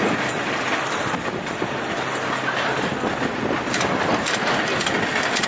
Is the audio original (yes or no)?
yes